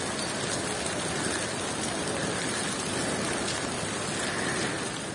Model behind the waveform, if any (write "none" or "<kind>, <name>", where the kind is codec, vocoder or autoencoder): none